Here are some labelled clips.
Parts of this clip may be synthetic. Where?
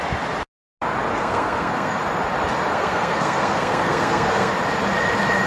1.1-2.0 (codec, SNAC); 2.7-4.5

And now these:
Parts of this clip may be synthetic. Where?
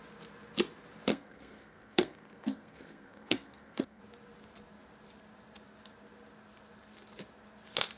1.1-4.0 (codec, SNAC)